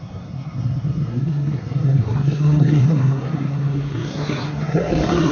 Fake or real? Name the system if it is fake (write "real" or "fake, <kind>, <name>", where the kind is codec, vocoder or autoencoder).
fake, codec, SNAC